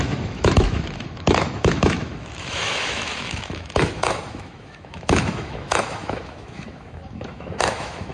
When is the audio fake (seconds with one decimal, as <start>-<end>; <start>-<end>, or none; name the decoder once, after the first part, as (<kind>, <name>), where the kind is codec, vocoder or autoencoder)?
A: 0.0-8.1 (autoencoder, DAC-VAE)